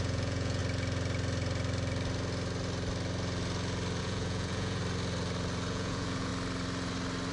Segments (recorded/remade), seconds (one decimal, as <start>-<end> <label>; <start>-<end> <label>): 0.0-0.6 remade; 0.6-4.0 recorded; 4.0-4.8 remade; 4.8-5.7 recorded; 5.7-6.3 remade; 6.3-7.3 recorded